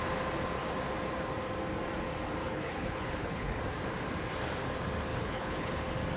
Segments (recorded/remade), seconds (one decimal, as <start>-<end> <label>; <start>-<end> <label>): 0.0-2.4 recorded; 2.4-3.6 remade; 3.6-5.1 recorded; 5.1-5.8 remade; 5.8-6.2 recorded